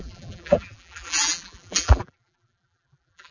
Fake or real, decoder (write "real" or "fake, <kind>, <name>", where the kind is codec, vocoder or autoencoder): fake, vocoder, BigVGAN v2